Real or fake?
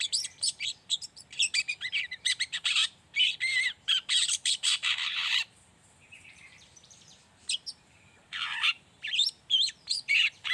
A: fake